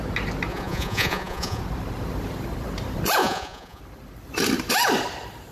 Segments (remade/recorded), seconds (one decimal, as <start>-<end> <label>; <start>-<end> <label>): 0.0-0.5 recorded; 0.5-1.6 remade; 1.6-3.2 recorded; 3.2-3.8 remade; 3.8-5.5 recorded